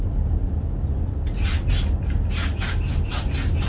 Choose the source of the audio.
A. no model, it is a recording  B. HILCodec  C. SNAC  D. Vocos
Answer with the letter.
A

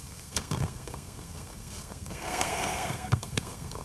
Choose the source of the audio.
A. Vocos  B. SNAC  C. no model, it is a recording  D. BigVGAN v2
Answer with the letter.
B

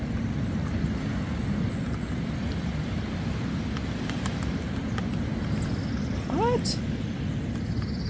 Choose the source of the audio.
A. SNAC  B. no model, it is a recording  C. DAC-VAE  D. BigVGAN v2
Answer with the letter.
B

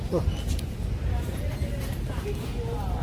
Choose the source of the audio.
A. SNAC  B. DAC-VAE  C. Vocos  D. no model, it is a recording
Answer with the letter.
D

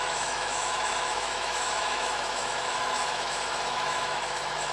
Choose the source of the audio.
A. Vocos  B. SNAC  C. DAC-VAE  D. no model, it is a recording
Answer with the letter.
C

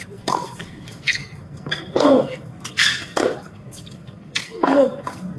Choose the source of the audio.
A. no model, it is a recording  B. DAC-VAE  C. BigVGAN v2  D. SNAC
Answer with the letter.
D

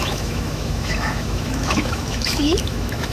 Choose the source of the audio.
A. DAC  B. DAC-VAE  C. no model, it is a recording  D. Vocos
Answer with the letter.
B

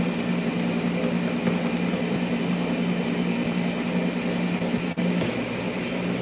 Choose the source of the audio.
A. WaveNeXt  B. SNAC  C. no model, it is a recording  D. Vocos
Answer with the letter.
C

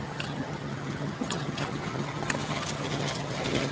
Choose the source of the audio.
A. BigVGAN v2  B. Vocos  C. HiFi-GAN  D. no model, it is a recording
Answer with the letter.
C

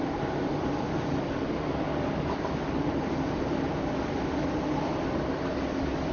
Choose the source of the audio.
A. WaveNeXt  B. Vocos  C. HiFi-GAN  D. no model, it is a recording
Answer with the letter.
D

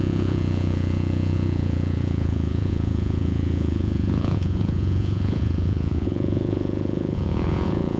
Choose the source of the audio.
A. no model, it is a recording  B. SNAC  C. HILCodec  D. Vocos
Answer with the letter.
D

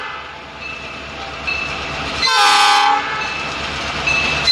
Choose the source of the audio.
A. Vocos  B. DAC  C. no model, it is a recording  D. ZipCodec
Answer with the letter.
C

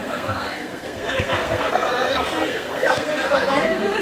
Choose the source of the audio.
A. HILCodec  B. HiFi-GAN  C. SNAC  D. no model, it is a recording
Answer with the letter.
C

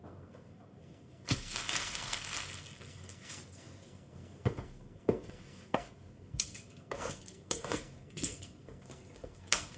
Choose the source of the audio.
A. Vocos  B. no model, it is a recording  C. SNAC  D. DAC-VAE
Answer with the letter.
C